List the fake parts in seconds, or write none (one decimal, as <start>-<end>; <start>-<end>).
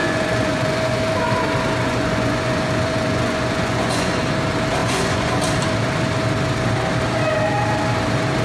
0.0-1.0; 1.8-4.2; 4.8-5.4